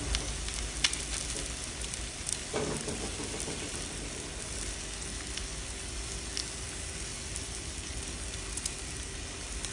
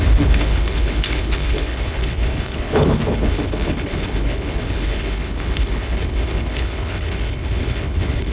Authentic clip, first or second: first